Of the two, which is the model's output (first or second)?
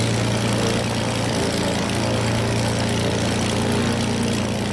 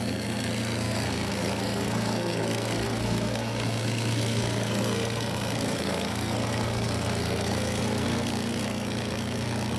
second